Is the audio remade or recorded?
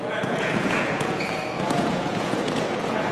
remade